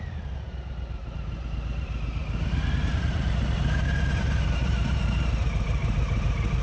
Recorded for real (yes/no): no